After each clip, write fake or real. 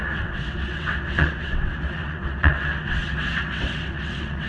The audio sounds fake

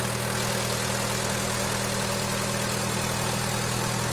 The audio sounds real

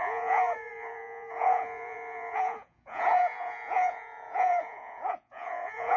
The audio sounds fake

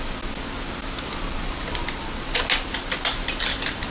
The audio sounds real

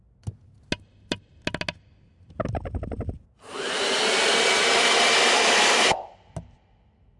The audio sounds real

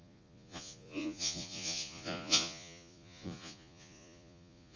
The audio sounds fake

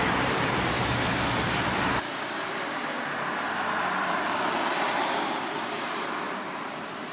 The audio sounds fake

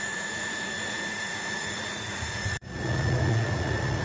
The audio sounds fake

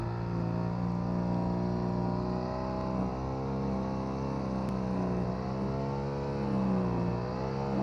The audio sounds real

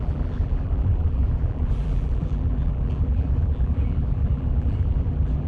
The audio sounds fake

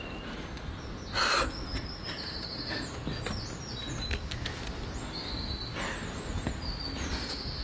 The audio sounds real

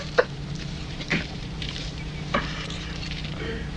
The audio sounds fake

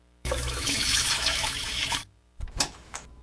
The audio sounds fake